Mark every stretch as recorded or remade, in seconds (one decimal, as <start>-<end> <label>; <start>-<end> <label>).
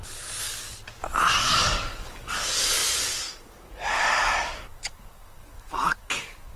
0.0-0.8 remade; 0.8-1.4 recorded; 1.4-6.6 remade